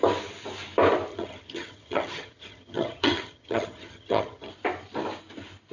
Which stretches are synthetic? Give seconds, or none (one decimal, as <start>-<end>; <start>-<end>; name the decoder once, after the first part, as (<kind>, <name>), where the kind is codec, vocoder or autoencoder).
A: 1.1-4.5 (vocoder, HiFi-GAN)